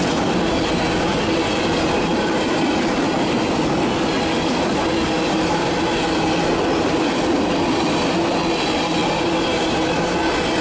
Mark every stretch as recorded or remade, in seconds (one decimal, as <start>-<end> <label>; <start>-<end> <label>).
0.0-10.6 recorded